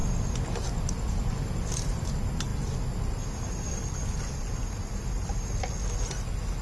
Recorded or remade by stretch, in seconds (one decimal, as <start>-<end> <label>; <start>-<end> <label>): 0.0-6.6 recorded